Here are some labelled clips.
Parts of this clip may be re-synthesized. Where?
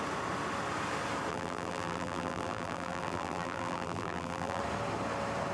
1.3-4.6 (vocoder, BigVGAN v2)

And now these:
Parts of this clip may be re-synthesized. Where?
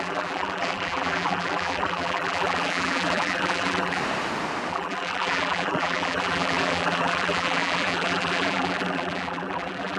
0.0-4.0 (vocoder, BigVGAN v2); 4.7-10.0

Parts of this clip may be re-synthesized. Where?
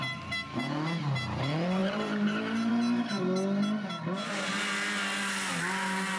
1.8-2.7 (vocoder, BigVGAN v2)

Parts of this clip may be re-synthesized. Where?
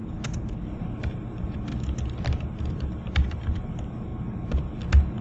0.7-1.7 (vocoder, BigVGAN v2); 2.6-4.1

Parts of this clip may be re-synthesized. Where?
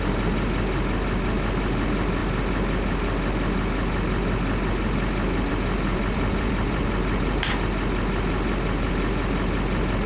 5.9-7.5 (vocoder, BigVGAN v2)